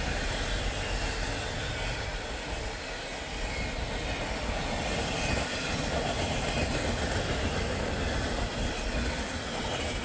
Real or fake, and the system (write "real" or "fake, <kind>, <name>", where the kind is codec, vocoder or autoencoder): real